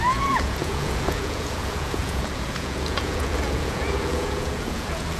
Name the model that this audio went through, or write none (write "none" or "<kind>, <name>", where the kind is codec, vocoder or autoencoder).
vocoder, Vocos